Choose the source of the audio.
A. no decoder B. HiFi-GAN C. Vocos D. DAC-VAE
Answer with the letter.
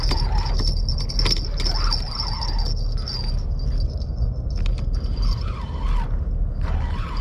A